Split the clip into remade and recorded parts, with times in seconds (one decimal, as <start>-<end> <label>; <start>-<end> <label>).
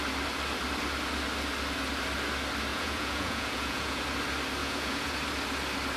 0.0-2.7 recorded; 2.7-4.0 remade; 4.0-4.6 recorded; 4.6-5.2 remade; 5.2-6.0 recorded